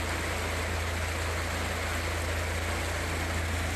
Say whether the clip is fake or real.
real